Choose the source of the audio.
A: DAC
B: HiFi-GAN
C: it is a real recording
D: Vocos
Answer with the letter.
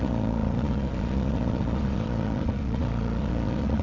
D